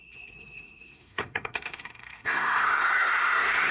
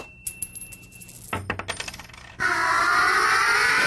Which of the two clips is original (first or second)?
second